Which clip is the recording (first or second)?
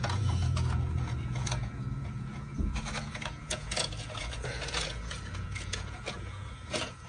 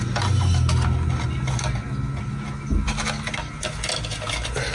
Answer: second